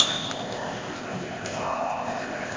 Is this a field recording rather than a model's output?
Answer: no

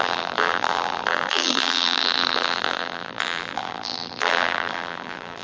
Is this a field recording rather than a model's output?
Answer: no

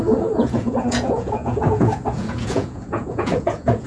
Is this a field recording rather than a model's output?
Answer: no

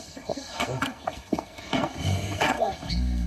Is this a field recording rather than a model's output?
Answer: no